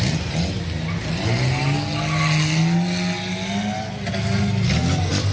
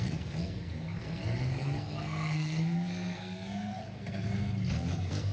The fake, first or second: second